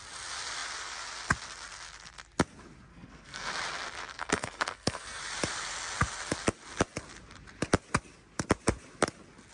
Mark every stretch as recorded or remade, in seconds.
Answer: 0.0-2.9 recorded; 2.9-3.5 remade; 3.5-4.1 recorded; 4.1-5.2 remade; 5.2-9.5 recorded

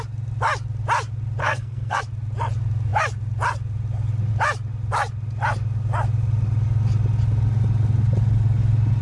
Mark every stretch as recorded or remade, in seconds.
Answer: 0.0-1.4 recorded; 1.4-2.0 remade; 2.0-9.0 recorded

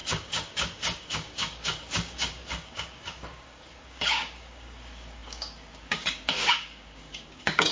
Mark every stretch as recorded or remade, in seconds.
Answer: 0.0-7.7 remade

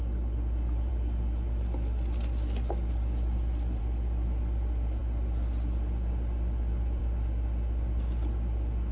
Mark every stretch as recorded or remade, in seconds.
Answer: 0.0-8.9 recorded